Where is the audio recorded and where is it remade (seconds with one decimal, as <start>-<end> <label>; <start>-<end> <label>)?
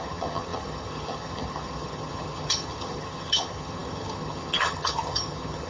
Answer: 0.0-5.7 remade